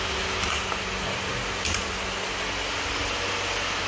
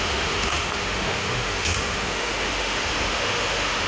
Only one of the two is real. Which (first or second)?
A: first